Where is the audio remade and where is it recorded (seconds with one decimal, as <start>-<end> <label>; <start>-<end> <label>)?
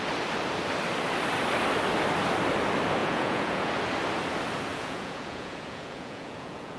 0.0-3.0 recorded; 3.0-3.7 remade; 3.7-4.7 recorded; 4.7-6.8 remade